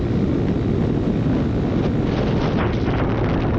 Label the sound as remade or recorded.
recorded